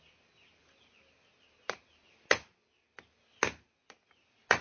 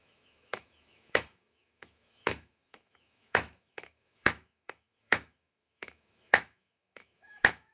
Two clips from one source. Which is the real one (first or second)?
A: first